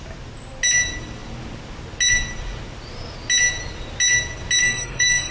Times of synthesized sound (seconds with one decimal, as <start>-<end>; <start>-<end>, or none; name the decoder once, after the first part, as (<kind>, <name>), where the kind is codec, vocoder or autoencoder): 4.6-5.3 (codec, SNAC)